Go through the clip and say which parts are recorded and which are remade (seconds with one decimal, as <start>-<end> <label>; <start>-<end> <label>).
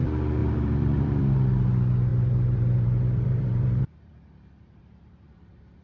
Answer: 0.0-0.4 recorded; 0.4-1.2 remade; 1.2-2.1 recorded; 2.1-5.8 remade